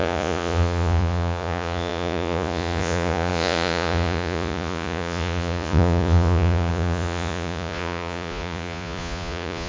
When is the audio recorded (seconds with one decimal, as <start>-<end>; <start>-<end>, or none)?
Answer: none